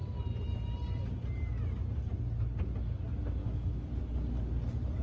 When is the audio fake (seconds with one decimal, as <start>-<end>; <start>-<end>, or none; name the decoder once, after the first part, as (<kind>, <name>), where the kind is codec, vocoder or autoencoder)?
3.4-3.9 (autoencoder, DAC-VAE)